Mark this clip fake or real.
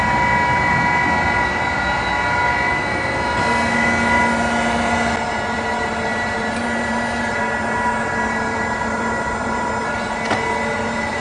real